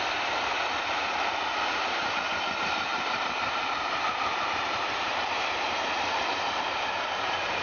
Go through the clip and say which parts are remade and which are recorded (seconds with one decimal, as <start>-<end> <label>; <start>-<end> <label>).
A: 0.0-0.5 recorded; 0.5-1.1 remade; 1.1-2.9 recorded; 2.9-7.6 remade

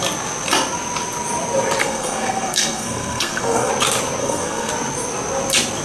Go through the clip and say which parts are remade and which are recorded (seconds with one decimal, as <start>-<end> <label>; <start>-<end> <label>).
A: 0.0-1.8 recorded; 1.8-3.7 remade; 3.7-4.2 recorded; 4.2-4.7 remade; 4.7-5.8 recorded

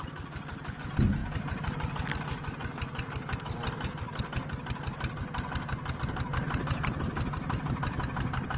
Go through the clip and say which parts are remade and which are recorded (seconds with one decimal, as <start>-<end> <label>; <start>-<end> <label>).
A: 0.0-8.6 recorded

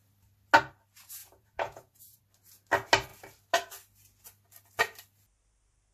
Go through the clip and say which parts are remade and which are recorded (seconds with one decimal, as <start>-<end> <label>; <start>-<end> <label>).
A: 0.0-1.2 recorded; 1.2-2.2 remade; 2.2-5.9 recorded